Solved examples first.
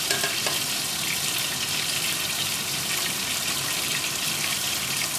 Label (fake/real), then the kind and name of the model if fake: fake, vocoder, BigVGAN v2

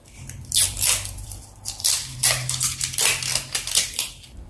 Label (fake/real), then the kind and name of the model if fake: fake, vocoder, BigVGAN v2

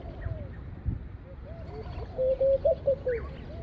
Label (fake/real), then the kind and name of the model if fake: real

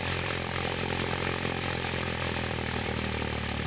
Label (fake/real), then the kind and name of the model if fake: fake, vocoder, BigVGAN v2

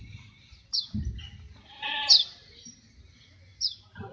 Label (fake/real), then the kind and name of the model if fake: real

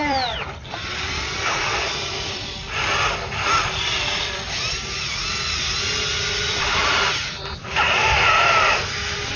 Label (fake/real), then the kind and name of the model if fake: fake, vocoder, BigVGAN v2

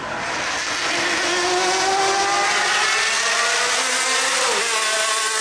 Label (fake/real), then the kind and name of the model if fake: real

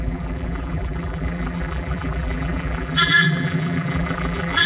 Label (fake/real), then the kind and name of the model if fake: fake, vocoder, BigVGAN v2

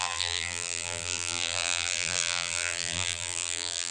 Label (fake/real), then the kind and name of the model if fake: fake, vocoder, BigVGAN v2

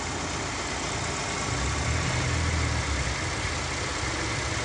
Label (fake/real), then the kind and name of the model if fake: real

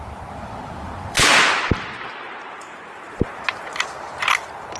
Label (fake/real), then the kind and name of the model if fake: fake, vocoder, BigVGAN v2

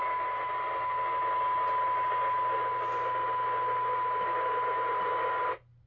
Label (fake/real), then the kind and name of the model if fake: real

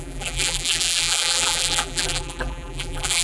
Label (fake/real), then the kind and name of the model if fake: fake, vocoder, BigVGAN v2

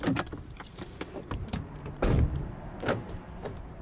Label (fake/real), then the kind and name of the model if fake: fake, vocoder, BigVGAN v2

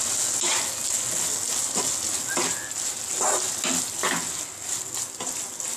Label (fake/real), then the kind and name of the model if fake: real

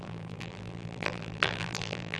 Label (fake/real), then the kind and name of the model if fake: fake, vocoder, BigVGAN v2